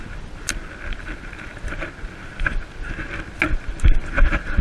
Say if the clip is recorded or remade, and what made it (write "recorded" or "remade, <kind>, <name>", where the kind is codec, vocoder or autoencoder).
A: recorded